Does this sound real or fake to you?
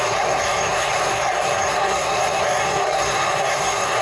fake